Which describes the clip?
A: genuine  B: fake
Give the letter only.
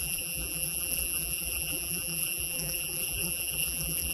B